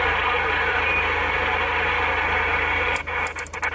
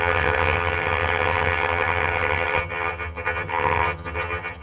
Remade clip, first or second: second